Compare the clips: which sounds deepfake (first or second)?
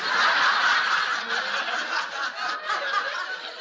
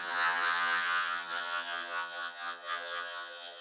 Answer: second